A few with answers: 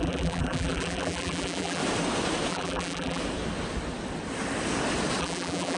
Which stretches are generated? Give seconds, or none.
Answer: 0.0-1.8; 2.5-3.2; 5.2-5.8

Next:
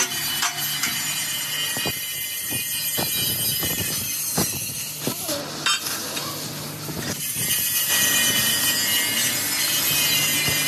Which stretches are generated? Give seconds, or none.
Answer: none

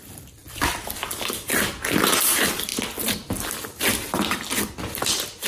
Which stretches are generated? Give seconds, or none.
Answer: none

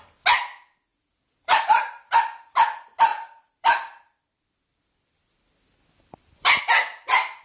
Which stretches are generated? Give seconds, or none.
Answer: 0.9-2.6; 3.1-6.6

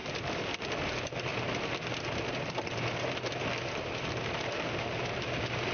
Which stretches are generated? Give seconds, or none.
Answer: 0.0-0.6; 1.3-4.7

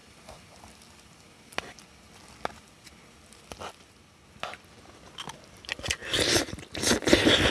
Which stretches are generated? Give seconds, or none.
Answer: 6.0-6.6

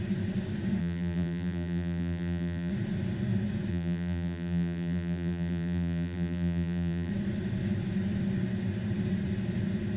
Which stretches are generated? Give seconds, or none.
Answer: 0.8-2.7; 3.7-7.1

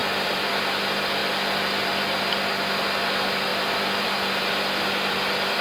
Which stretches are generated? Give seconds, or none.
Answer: 0.0-0.5; 3.5-5.6